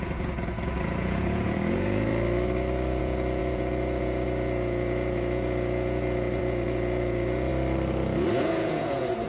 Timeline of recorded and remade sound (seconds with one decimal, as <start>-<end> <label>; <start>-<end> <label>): 0.0-2.1 remade; 2.1-3.0 recorded; 3.0-7.5 remade; 7.5-8.3 recorded; 8.3-9.3 remade